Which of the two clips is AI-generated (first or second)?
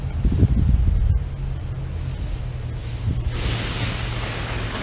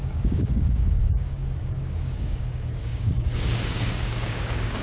second